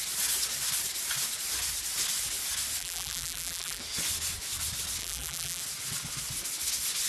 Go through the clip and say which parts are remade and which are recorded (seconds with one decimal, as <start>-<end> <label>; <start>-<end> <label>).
0.0-2.8 recorded; 2.8-3.8 remade; 3.8-5.0 recorded; 5.0-5.6 remade; 5.6-7.1 recorded